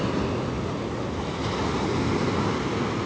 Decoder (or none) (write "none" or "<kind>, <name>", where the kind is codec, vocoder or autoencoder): none